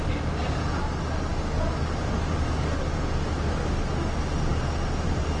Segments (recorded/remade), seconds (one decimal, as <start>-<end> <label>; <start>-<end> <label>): 0.0-5.4 recorded